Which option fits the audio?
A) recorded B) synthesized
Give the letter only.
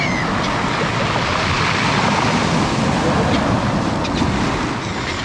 A